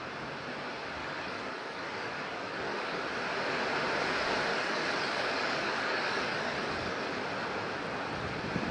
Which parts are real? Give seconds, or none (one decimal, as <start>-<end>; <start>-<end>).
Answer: 0.0-1.0; 3.0-4.5; 7.0-8.7